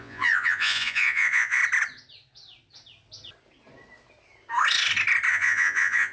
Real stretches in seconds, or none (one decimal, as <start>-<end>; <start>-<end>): 1.6-5.3